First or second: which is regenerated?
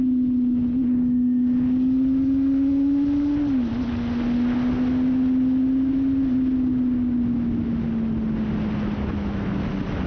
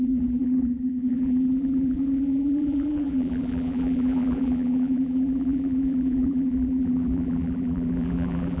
second